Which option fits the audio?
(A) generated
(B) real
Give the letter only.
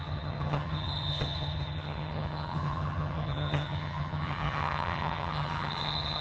A